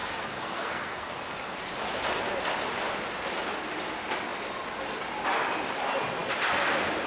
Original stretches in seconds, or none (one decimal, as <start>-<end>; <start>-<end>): 1.1-7.1